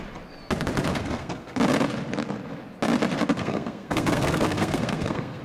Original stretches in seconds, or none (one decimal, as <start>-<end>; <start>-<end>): 0.0-0.9; 1.6-3.3